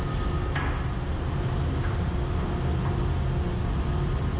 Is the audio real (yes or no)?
yes